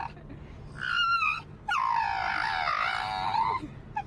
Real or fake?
real